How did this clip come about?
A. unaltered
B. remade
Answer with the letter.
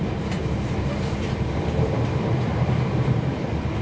B